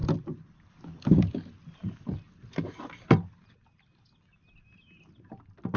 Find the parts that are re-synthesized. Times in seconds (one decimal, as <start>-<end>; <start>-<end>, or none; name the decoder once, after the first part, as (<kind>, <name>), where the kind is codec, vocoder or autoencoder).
0.0-1.1 (vocoder, BigVGAN v2)